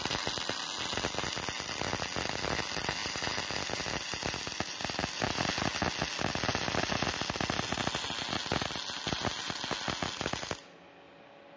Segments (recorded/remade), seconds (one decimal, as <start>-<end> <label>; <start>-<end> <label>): 0.0-3.0 recorded; 3.0-5.5 remade; 5.5-11.6 recorded